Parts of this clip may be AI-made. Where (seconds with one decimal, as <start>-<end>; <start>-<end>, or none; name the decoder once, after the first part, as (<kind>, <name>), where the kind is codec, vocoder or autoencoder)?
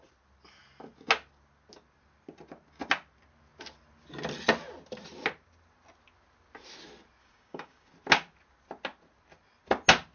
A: 7.2-7.9 (codec, DAC)